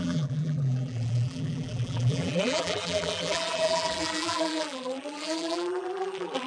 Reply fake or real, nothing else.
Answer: fake